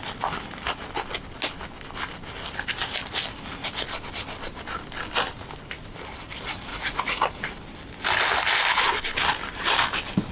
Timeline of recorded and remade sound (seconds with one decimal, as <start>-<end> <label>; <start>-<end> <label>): 0.0-6.7 recorded; 6.7-7.3 remade; 7.3-10.3 recorded